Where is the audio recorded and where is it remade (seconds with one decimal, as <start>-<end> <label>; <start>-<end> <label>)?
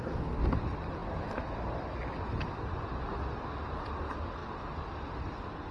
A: 0.0-5.7 recorded